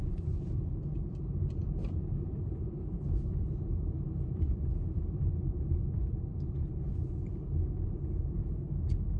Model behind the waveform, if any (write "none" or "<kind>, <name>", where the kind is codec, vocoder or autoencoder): vocoder, BigVGAN v2